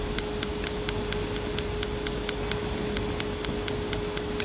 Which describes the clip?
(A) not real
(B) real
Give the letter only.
B